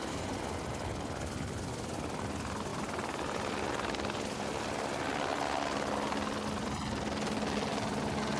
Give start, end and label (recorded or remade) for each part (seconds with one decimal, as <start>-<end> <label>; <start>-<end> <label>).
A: 0.0-8.4 recorded